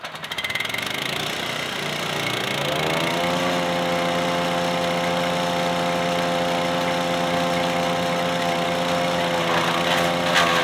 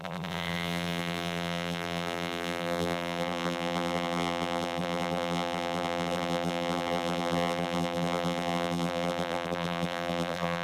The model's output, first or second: second